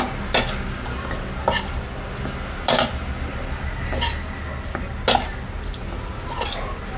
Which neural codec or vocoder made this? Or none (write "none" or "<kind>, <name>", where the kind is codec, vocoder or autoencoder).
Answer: none